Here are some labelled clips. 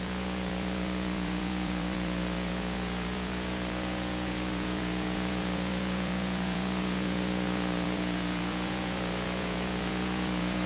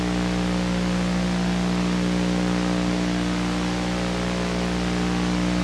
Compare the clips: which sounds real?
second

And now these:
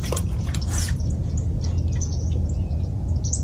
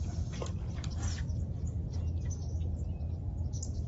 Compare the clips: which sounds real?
second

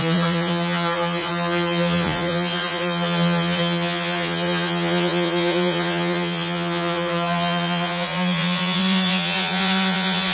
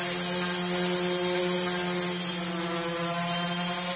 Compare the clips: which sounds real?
second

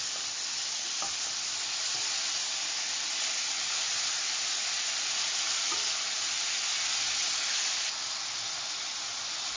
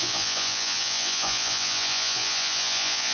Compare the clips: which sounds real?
first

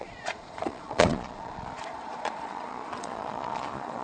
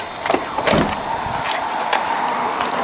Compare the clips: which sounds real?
second